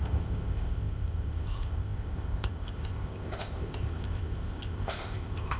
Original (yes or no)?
no